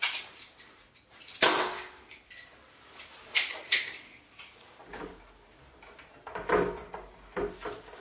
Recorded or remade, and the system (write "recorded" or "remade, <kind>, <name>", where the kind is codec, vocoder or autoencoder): recorded